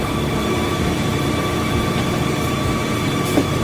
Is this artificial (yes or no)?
yes